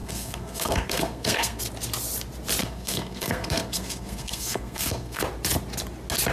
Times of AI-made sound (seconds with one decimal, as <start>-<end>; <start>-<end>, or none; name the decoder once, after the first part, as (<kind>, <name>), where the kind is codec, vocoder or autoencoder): 0.0-1.6 (codec, SNAC); 2.6-5.2